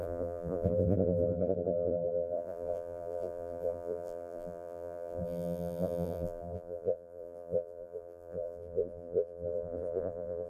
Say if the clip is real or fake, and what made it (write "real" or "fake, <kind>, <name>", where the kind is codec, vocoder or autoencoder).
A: fake, vocoder, BigVGAN v2